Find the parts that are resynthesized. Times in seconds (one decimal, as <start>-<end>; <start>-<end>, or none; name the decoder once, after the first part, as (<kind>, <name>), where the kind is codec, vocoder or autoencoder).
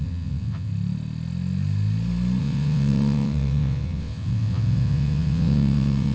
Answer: 0.0-0.7 (vocoder, WaveNeXt); 2.4-6.1